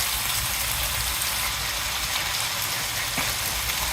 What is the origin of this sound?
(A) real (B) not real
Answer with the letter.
A